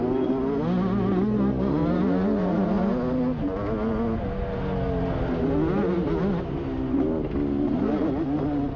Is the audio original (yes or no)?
yes